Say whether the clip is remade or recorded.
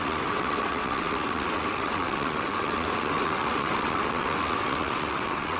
remade